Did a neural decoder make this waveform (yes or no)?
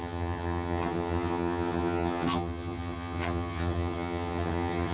yes